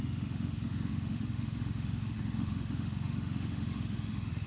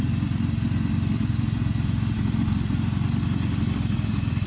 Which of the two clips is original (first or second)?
second